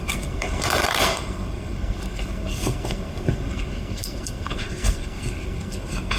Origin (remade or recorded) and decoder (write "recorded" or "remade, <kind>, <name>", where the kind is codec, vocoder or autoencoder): remade, codec, SNAC